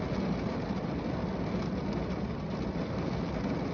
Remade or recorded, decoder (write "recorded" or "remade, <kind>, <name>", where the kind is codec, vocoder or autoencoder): recorded